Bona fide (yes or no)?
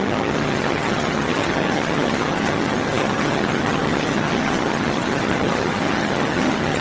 no